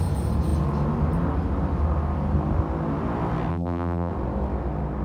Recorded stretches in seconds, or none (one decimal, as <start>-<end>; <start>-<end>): 0.0-3.5; 4.1-5.0